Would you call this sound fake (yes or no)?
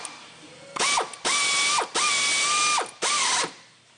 no